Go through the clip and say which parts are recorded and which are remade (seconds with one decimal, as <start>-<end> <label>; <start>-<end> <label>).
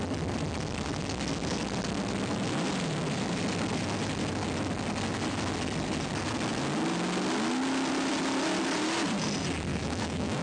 0.0-9.7 recorded; 9.7-10.4 remade